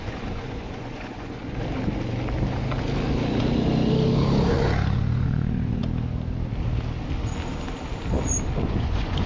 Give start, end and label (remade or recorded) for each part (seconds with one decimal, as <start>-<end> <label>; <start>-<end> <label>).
0.0-1.4 remade; 1.4-4.5 recorded; 4.5-5.8 remade; 5.8-8.6 recorded; 8.6-9.3 remade